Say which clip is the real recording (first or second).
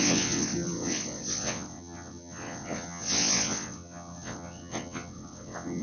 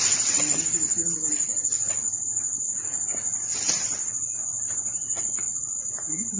second